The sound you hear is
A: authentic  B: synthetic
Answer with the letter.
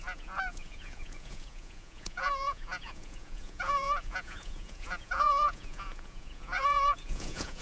B